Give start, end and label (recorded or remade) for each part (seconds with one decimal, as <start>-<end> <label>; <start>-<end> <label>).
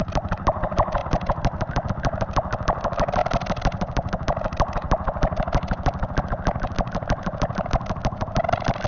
0.0-8.9 recorded